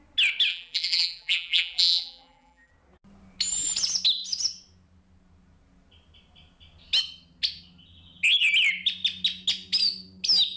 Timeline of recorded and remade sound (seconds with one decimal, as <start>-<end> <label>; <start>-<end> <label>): 0.0-0.5 recorded; 0.5-2.7 remade; 2.7-10.6 recorded